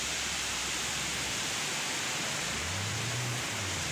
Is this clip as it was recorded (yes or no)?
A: no